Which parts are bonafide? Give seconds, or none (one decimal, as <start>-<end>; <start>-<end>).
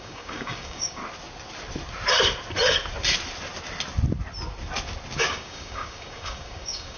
1.0-5.2